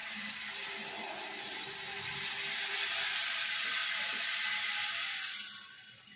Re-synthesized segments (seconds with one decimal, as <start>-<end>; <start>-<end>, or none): none

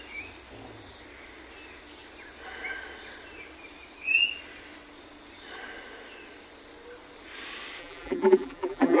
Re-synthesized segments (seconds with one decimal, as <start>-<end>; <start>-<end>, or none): 7.8-9.0

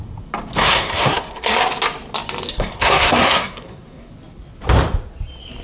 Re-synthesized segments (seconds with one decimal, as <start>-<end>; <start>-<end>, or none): 0.6-1.6; 2.5-4.1

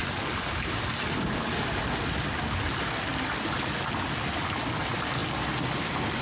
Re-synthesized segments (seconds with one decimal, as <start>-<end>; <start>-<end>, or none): none